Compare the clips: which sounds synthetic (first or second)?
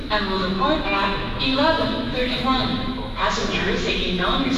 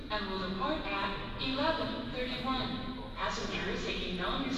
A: first